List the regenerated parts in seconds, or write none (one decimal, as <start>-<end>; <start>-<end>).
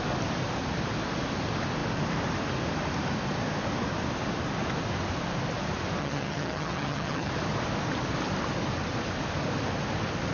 6.0-7.3